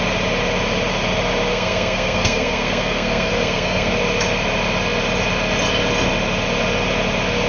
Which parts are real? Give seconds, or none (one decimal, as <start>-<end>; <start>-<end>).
0.0-1.5; 3.9-7.5